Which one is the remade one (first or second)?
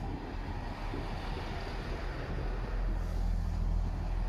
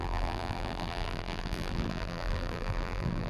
second